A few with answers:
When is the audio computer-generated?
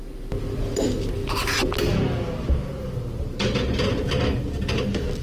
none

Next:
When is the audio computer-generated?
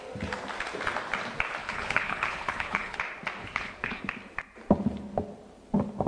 1.6-3.0 (codec, HILCodec); 3.4-4.0